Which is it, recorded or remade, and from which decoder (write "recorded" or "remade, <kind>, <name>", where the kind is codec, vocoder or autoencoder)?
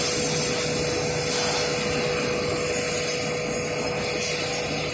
recorded